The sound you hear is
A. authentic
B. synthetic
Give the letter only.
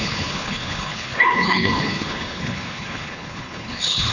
B